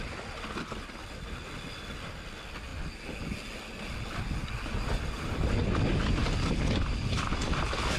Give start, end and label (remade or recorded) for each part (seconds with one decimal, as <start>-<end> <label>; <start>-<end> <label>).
0.0-8.0 recorded